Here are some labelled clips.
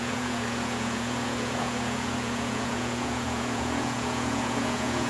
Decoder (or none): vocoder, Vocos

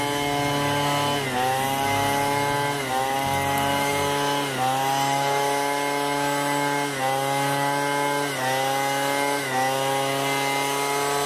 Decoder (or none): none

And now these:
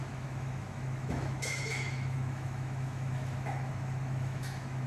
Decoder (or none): autoencoder, DAC-VAE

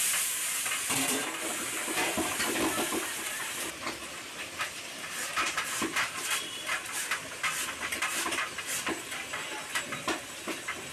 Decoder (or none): vocoder, BigVGAN v2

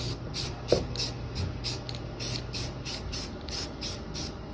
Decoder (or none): none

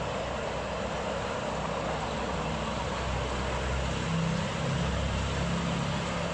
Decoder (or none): none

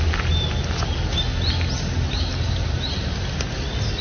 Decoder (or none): none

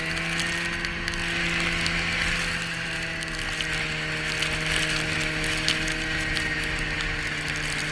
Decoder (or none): none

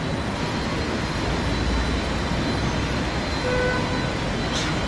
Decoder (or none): none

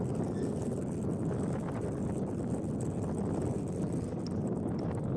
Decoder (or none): none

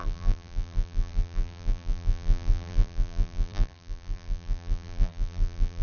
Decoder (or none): vocoder, BigVGAN v2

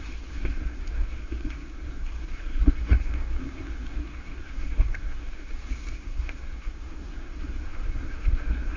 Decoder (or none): codec, SNAC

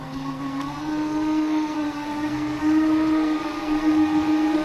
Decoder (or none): codec, SNAC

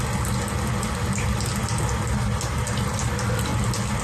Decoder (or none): none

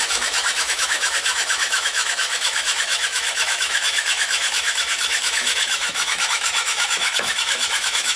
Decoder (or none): autoencoder, DAC-VAE